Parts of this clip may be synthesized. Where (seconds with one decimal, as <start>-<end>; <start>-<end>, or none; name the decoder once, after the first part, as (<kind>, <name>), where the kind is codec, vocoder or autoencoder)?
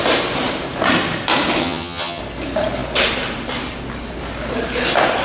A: 1.6-2.2 (vocoder, HiFi-GAN)